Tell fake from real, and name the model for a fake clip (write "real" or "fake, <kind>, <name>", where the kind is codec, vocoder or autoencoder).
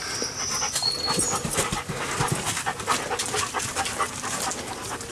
real